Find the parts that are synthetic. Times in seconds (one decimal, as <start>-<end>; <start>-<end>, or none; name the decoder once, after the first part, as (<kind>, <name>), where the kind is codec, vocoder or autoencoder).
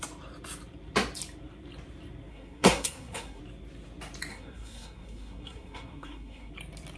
2.3-3.4 (codec, SNAC); 4.3-6.5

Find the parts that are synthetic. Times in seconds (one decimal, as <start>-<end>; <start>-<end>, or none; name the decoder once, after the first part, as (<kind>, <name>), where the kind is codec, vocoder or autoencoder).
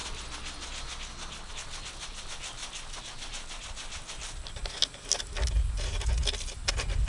none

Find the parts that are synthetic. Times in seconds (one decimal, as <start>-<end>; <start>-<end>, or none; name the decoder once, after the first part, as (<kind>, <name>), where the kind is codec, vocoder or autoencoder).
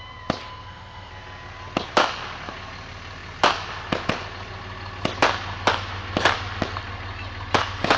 0.5-1.1 (codec, SNAC)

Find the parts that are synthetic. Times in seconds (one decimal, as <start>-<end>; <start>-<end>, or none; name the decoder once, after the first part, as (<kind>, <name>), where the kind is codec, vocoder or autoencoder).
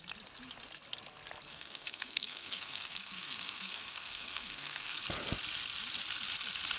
1.5-5.0 (codec, SNAC)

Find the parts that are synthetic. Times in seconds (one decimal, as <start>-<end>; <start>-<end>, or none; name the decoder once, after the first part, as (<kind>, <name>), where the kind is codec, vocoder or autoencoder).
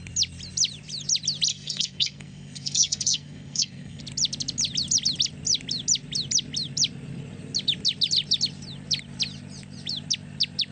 1.5-4.0 (codec, SNAC)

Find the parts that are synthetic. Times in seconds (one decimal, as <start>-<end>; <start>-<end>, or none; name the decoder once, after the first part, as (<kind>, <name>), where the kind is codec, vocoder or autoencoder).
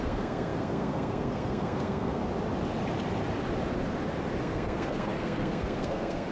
0.0-2.2 (codec, SNAC); 4.4-6.3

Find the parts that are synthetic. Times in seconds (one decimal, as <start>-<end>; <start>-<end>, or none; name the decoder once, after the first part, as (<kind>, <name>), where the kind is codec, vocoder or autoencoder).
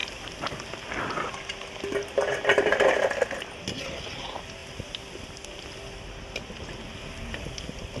none